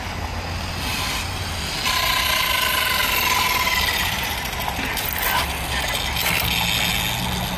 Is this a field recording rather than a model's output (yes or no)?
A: yes